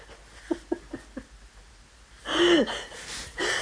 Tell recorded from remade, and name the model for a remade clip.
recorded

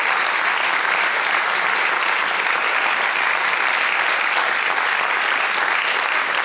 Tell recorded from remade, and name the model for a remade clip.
recorded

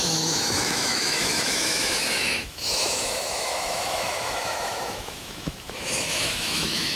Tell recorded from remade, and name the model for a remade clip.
remade, autoencoder, DAC-VAE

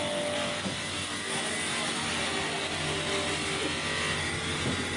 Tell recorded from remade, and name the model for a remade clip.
recorded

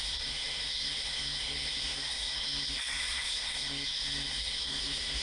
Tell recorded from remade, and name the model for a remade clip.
remade, codec, SNAC